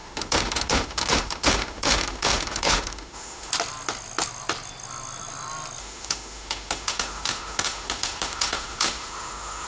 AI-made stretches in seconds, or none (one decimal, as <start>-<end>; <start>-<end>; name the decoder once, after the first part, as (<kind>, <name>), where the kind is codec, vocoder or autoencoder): 0.0-3.5 (autoencoder, DAC-VAE); 5.8-9.7